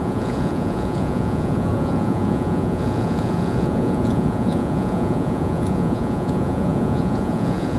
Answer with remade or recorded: remade